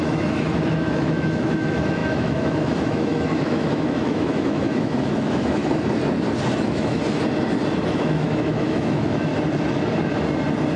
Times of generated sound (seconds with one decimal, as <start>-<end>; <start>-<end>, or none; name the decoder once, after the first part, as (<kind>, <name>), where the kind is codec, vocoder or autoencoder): 0.0-5.6 (autoencoder, DAC-VAE); 6.6-7.0; 7.9-9.3